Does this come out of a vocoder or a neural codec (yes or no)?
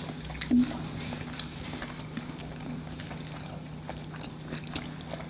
no